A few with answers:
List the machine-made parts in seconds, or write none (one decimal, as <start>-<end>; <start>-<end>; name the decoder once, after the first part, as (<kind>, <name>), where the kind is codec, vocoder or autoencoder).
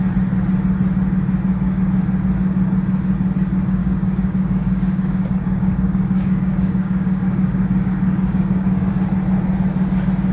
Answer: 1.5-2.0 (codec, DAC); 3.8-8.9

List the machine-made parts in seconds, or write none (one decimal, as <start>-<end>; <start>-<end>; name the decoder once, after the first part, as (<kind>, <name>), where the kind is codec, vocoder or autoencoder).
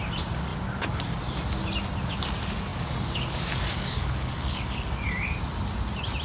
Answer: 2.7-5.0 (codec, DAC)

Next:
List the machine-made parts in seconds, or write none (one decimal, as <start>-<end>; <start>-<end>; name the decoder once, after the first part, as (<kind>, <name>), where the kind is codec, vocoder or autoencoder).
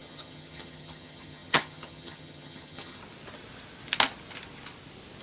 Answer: 0.0-3.0 (vocoder, HiFi-GAN)